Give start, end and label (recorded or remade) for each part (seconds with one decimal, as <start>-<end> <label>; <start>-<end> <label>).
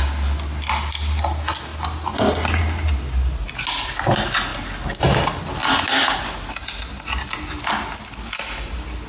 0.0-9.1 recorded